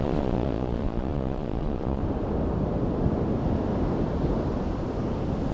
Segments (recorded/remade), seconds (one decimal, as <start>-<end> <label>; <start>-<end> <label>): 0.0-2.0 remade; 2.0-5.5 recorded